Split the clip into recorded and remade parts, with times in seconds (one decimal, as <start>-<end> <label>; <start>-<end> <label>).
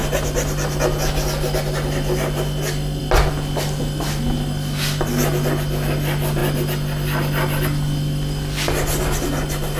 0.0-9.8 recorded